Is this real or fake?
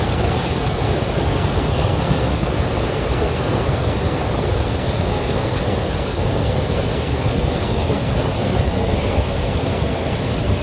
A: fake